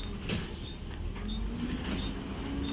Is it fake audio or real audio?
real